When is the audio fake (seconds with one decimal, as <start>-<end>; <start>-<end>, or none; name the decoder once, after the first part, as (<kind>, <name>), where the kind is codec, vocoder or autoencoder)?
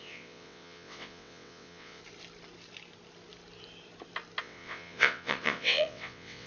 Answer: 0.0-2.0 (vocoder, WaveNeXt); 4.4-6.5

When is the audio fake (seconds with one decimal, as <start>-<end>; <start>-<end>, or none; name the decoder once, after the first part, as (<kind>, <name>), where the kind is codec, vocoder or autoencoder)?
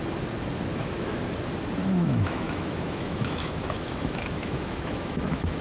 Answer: 0.7-1.2 (autoencoder, DAC-VAE); 1.8-5.6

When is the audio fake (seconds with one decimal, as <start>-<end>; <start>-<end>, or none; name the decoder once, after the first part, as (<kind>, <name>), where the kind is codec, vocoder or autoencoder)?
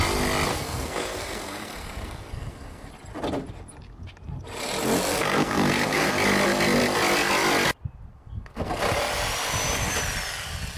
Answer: 0.5-2.9 (codec, SNAC); 5.1-6.1; 8.1-8.8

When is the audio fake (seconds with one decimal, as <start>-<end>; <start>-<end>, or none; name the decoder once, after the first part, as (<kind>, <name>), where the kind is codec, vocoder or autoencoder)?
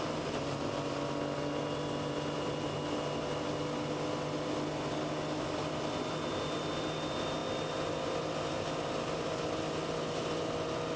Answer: none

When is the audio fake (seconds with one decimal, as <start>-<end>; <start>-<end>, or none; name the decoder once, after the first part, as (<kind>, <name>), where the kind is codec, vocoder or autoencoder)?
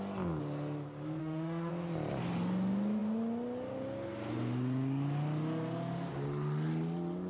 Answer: 1.2-1.7 (autoencoder, DAC-VAE)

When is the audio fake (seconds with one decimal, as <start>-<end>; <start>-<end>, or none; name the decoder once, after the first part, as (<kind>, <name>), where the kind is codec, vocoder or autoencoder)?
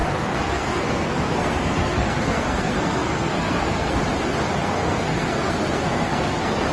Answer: 0.0-4.0 (codec, SNAC); 4.6-6.7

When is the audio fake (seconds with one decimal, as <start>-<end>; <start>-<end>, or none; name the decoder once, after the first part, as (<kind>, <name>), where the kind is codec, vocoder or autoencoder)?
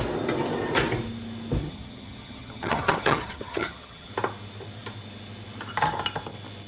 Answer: 1.6-4.1 (vocoder, HiFi-GAN)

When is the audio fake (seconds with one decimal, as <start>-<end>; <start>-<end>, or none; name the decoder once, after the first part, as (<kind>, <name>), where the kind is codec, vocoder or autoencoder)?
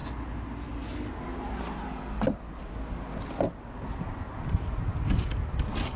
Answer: none